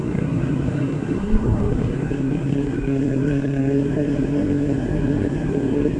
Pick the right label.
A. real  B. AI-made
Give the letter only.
B